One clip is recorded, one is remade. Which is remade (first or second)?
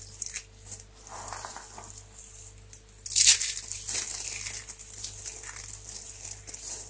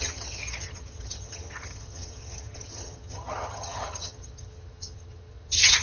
second